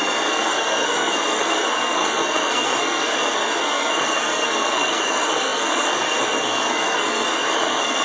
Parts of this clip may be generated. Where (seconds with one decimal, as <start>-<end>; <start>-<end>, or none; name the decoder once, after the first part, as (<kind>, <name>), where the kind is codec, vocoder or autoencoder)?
0.0-8.0 (codec, SNAC)